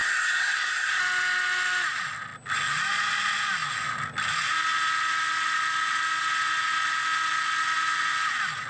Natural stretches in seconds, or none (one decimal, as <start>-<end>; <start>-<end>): 1.0-8.7